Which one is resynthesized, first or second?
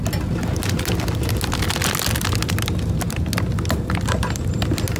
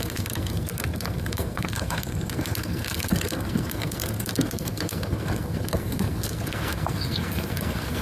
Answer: second